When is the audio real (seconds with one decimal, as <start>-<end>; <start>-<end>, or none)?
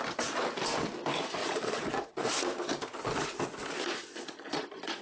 0.0-1.4; 2.3-4.1